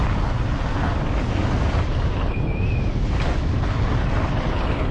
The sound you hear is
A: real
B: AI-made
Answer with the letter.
A